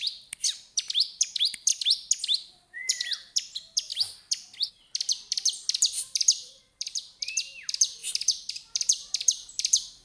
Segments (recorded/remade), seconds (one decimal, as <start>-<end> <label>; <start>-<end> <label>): 0.0-1.7 remade; 1.7-2.5 recorded; 2.5-10.0 remade